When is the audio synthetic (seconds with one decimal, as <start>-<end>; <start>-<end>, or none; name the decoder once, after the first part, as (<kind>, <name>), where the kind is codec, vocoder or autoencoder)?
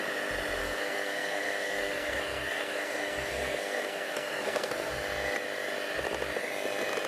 0.6-4.9 (codec, SNAC)